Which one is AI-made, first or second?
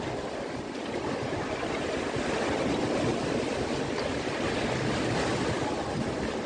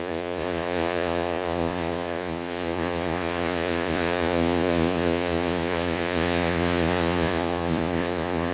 second